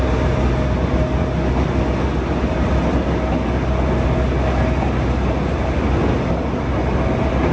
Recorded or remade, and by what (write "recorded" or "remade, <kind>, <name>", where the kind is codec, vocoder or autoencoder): recorded